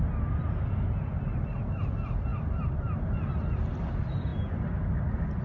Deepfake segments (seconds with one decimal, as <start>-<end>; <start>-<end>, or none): none